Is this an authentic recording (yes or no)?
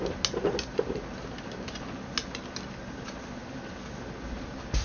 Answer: yes